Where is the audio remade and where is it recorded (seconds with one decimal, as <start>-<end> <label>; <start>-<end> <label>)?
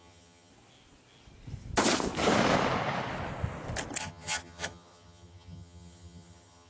0.0-0.5 remade; 0.5-4.0 recorded; 4.0-6.7 remade